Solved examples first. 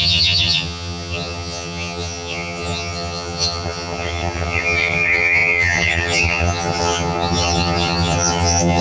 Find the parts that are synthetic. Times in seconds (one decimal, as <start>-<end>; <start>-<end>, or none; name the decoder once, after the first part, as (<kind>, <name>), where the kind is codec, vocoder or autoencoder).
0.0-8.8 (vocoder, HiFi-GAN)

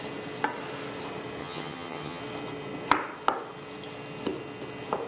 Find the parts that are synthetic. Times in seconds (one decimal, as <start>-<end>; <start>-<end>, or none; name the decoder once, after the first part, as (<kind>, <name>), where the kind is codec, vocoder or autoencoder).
1.4-2.2 (vocoder, HiFi-GAN)

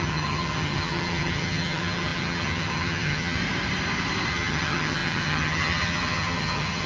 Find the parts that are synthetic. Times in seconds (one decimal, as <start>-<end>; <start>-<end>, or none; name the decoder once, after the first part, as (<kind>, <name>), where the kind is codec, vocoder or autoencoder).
0.0-3.4 (vocoder, HiFi-GAN); 4.3-6.9

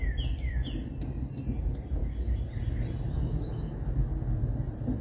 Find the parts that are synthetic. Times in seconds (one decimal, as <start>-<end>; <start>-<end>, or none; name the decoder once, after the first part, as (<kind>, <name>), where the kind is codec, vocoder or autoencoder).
none

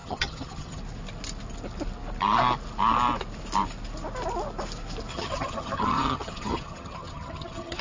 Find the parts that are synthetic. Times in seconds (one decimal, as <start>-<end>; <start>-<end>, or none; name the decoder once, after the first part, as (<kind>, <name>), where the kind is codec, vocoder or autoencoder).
0.0-0.8 (vocoder, HiFi-GAN); 5.1-7.8

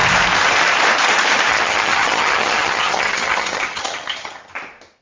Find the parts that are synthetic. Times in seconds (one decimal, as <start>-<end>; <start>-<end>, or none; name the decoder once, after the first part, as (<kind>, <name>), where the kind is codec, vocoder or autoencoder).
1.5-4.5 (vocoder, HiFi-GAN)